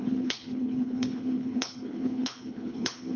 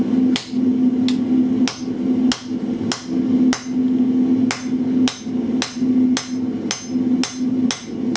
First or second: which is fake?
first